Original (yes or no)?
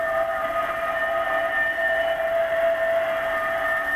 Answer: yes